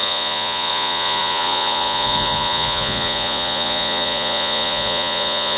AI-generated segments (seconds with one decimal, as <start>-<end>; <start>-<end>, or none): 0.0-5.6